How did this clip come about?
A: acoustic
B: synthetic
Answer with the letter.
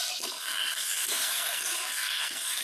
B